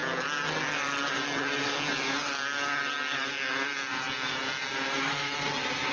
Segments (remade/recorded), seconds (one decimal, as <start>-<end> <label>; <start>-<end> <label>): 0.0-5.9 recorded